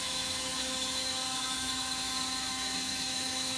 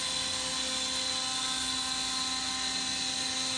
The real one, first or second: second